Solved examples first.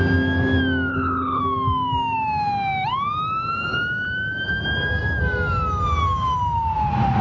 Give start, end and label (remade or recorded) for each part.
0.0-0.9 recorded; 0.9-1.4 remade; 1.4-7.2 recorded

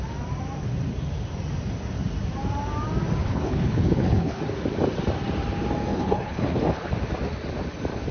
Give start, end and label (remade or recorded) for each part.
0.0-3.2 recorded; 3.2-4.4 remade; 4.4-5.9 recorded; 5.9-6.9 remade; 6.9-8.1 recorded

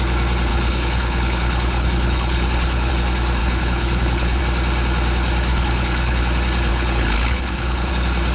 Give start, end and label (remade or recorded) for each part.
0.0-0.5 recorded; 0.5-2.9 remade; 2.9-3.4 recorded; 3.4-4.4 remade; 4.4-5.5 recorded; 5.5-6.2 remade; 6.2-6.7 recorded; 6.7-7.9 remade; 7.9-8.3 recorded

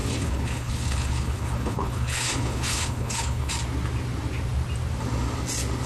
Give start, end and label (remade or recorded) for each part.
0.0-3.5 remade; 3.5-5.9 recorded

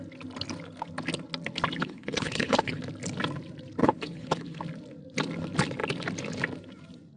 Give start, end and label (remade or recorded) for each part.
0.0-1.8 recorded; 1.8-2.8 remade; 2.8-3.8 recorded; 3.8-4.6 remade; 4.6-7.2 recorded

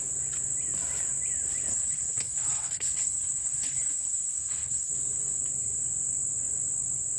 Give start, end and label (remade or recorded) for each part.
0.0-1.7 recorded; 1.7-4.9 remade; 4.9-7.2 recorded

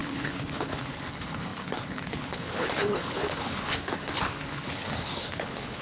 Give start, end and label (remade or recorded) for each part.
0.0-5.8 remade

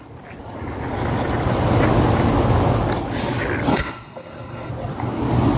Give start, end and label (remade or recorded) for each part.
0.0-3.7 recorded; 3.7-4.7 remade; 4.7-5.6 recorded